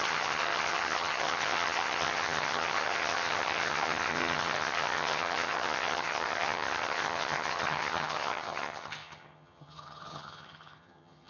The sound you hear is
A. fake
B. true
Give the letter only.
A